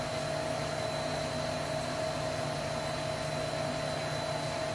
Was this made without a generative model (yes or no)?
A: yes